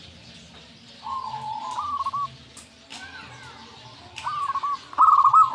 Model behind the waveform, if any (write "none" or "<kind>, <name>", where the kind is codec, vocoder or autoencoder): none